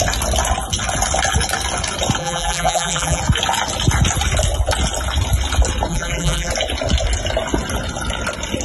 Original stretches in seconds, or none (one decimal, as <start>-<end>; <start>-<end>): 0.0-2.2; 3.2-5.9; 6.5-8.6